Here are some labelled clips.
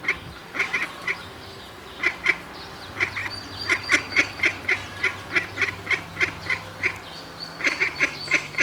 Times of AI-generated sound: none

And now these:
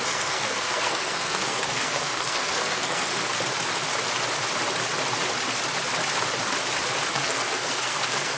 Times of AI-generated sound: 0.0-3.1 (codec, SNAC); 7.1-8.4

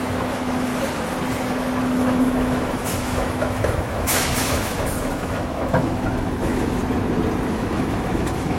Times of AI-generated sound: 0.0-0.7 (autoencoder, DAC-VAE); 1.8-6.8; 7.5-8.6

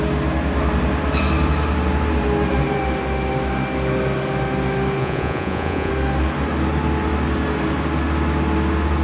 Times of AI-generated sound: 5.0-5.9 (vocoder, Vocos)

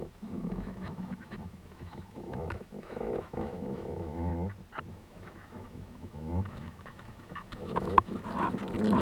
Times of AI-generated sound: 0.0-4.3 (autoencoder, DAC-VAE); 4.9-8.1